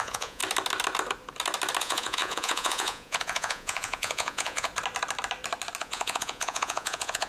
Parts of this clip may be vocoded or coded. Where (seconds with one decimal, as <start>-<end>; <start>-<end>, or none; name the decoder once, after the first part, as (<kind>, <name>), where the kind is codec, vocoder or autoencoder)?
0.0-0.4 (vocoder, Vocos); 1.8-4.7; 5.8-7.3